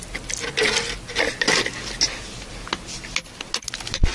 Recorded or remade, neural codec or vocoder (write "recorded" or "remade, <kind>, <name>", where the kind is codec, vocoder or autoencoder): recorded